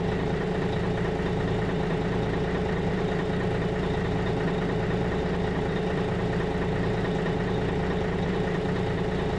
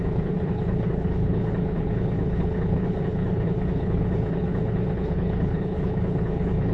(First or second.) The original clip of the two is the first